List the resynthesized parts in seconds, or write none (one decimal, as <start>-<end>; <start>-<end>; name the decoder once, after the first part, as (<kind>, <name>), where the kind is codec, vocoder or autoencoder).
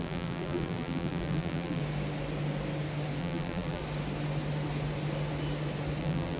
0.0-1.8 (vocoder, BigVGAN v2); 3.2-3.8; 6.0-6.4